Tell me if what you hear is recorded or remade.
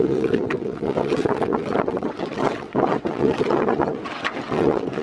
remade